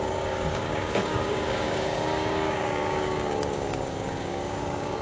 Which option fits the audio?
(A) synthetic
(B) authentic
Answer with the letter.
A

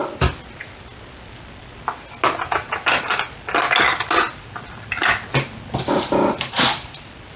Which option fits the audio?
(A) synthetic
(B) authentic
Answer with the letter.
B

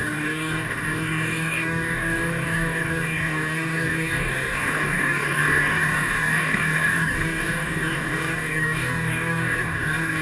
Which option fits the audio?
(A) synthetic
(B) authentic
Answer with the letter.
A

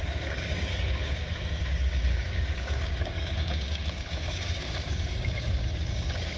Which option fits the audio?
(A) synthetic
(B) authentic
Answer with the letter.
A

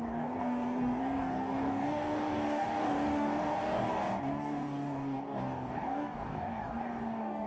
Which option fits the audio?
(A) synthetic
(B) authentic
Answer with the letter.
A